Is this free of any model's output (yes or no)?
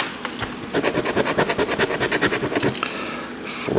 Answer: yes